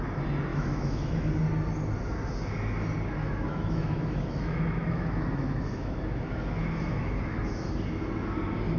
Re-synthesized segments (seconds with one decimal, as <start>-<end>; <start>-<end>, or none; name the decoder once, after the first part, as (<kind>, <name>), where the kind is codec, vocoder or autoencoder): 0.5-1.3 (autoencoder, DAC-VAE); 3.2-7.4